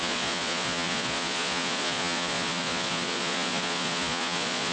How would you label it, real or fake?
fake